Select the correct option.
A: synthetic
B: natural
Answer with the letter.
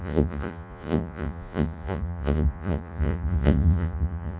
A